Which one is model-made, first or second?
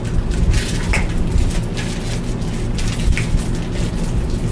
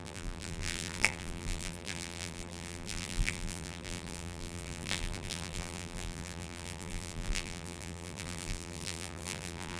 second